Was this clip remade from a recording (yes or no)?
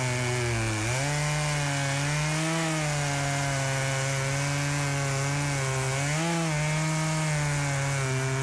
no